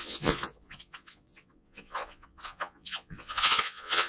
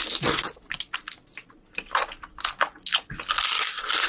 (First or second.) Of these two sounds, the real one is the second